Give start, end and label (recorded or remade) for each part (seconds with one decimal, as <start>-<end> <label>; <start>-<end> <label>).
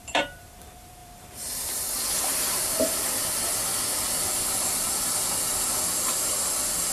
0.0-2.6 remade; 2.6-6.9 recorded